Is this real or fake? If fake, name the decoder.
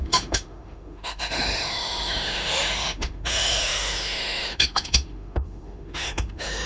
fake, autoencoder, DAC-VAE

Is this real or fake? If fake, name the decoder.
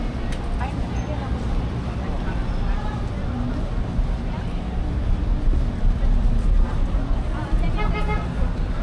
real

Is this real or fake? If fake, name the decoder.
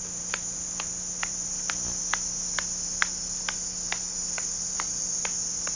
real